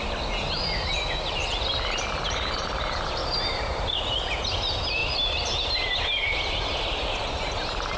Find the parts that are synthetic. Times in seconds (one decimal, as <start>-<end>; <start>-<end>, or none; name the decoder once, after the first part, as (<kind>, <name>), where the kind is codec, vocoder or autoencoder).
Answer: 3.2-3.9 (vocoder, BigVGAN v2); 5.0-6.4